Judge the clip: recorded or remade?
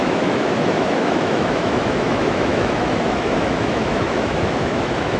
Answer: remade